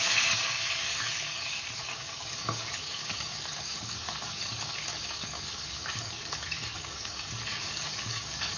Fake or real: fake